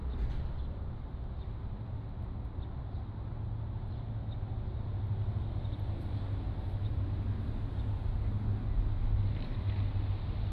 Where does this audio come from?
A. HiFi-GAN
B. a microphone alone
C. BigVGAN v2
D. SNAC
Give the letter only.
B